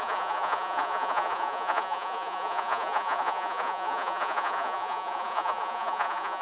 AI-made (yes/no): yes